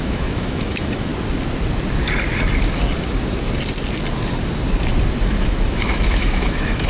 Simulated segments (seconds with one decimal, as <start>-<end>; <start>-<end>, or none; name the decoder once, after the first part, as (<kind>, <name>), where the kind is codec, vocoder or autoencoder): 0.0-1.1 (autoencoder, DAC-VAE); 5.2-6.9